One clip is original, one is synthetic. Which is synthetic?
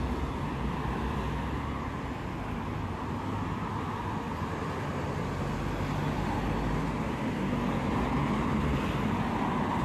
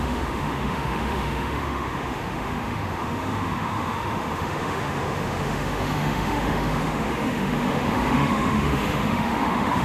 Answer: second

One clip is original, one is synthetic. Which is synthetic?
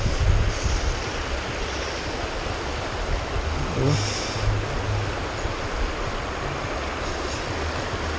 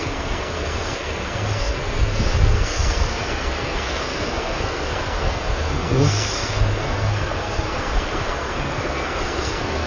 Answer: second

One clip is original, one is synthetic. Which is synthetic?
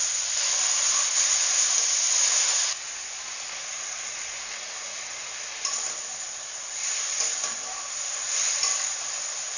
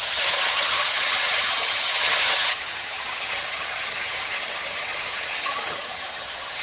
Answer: second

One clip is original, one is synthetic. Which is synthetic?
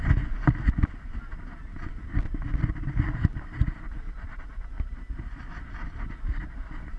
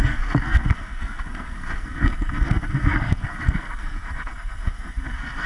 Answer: second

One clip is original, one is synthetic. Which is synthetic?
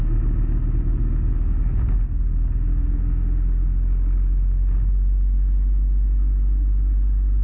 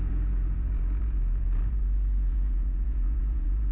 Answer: second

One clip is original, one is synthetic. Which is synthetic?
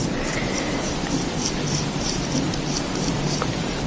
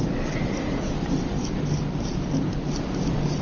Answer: first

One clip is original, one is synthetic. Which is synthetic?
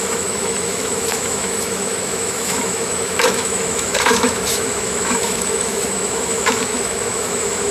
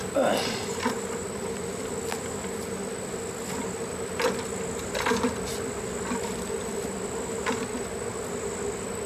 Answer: first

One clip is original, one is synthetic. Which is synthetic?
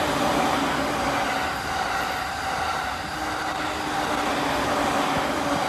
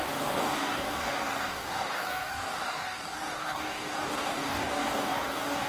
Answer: second